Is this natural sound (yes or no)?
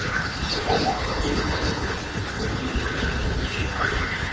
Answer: no